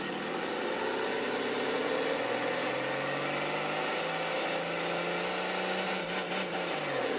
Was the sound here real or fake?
real